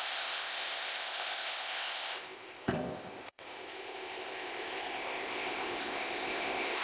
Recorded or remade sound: remade